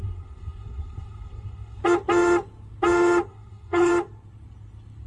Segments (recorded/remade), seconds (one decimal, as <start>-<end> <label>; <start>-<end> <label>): 0.0-1.8 remade; 1.8-3.3 recorded; 3.3-3.9 remade; 3.9-5.1 recorded